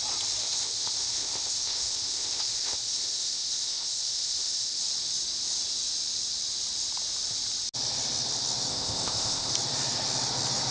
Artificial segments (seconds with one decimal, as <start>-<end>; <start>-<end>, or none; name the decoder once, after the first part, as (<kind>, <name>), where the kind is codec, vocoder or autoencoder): 0.4-4.8 (codec, ZipCodec); 8.7-9.5